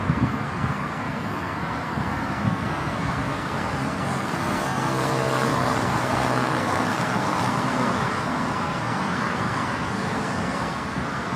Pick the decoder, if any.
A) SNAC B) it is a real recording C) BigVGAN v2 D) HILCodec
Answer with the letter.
A